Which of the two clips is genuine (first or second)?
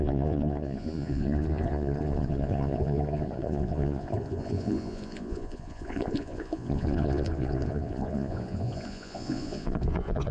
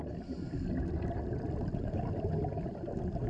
second